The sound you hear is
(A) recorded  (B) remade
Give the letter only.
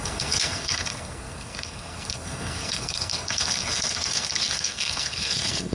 B